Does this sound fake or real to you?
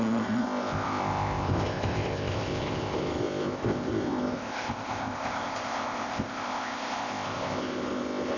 fake